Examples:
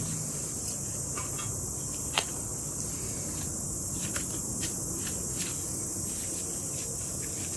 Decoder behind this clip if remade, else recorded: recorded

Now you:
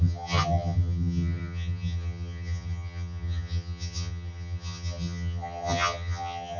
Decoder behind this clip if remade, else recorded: remade, vocoder, HiFi-GAN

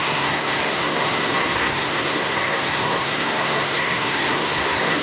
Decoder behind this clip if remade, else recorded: remade, codec, SNAC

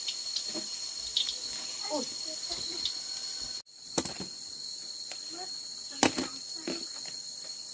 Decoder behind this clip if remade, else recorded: recorded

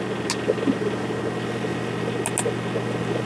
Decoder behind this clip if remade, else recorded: recorded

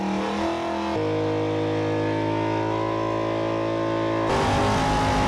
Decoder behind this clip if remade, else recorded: recorded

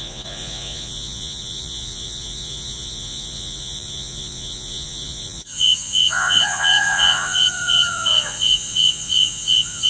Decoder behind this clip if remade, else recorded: remade, vocoder, Vocos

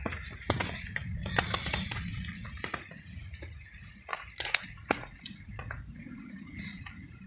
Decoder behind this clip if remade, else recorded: remade, vocoder, Vocos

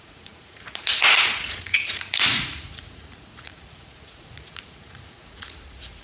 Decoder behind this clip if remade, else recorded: remade, vocoder, Vocos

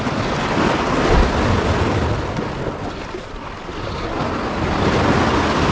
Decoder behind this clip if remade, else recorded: recorded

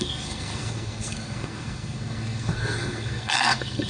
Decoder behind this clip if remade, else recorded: remade, codec, SNAC